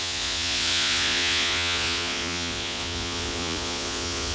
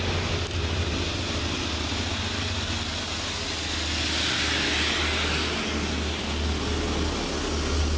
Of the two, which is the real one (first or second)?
second